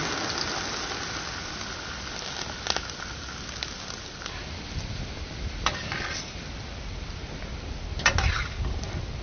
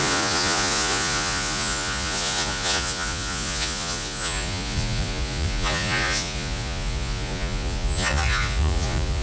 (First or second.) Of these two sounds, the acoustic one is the first